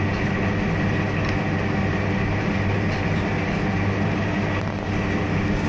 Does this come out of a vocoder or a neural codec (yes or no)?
no